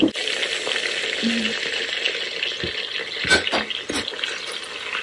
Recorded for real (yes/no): yes